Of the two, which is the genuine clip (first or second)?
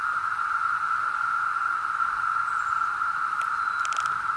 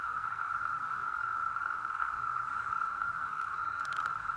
first